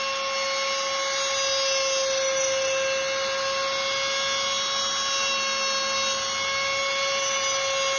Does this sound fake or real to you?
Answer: real